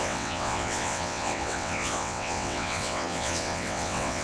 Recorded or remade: remade